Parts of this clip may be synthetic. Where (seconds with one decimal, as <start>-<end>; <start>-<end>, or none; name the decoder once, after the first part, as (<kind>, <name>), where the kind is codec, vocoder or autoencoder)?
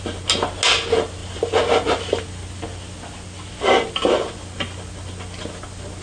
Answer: none